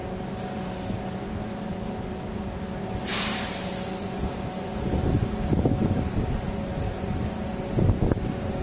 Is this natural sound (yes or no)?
yes